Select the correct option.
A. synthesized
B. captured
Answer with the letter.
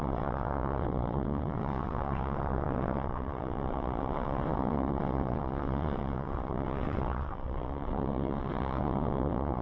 A